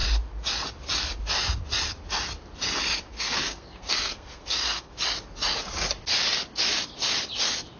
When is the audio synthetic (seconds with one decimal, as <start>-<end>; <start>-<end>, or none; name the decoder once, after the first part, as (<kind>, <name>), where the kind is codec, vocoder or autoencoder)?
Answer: 3.1-4.9 (codec, SNAC)